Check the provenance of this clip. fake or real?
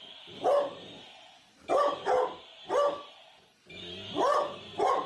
real